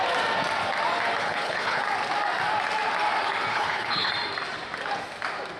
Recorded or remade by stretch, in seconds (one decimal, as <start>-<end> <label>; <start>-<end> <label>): 0.0-1.2 recorded; 1.2-1.8 remade; 1.8-3.5 recorded; 3.5-4.1 remade; 4.1-5.6 recorded